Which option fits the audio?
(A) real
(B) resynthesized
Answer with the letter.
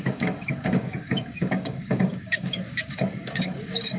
B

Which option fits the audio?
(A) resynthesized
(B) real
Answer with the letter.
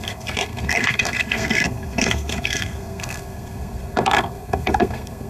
A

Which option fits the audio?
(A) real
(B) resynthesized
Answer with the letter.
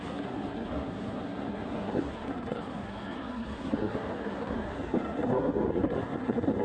B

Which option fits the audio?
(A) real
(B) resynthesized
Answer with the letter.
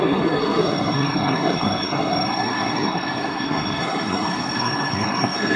B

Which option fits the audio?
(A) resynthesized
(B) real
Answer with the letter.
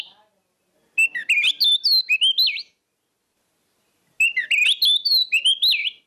B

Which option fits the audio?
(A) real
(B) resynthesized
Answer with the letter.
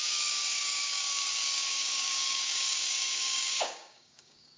B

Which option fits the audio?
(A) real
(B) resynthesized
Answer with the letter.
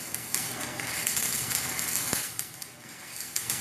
B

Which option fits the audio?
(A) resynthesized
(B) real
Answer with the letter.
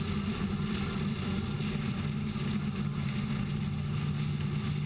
B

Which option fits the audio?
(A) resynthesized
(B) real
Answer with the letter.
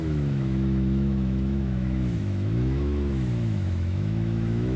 A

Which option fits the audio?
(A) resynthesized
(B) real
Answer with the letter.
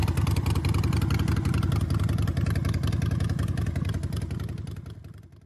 B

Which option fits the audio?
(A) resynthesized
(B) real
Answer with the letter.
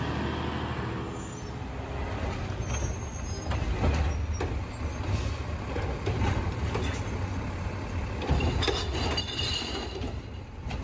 B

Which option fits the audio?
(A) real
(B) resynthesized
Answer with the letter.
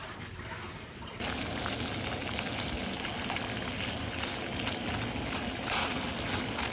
A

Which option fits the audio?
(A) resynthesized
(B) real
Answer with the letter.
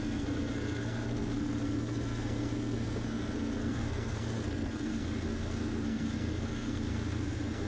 A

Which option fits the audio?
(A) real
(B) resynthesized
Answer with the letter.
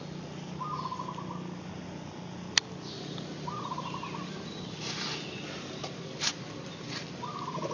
A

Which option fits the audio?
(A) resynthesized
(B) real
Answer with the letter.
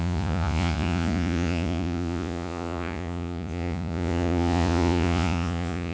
A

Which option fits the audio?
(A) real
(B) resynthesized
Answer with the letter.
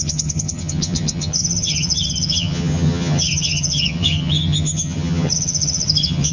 B